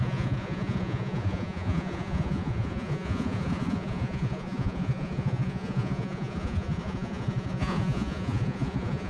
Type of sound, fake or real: fake